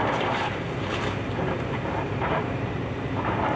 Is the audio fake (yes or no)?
yes